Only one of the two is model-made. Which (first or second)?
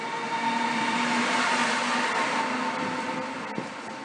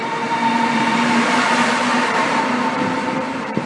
second